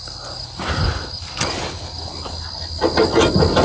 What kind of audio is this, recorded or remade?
recorded